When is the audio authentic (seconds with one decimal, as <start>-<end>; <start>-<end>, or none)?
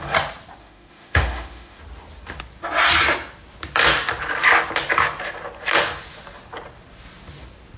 0.0-0.6; 1.8-7.8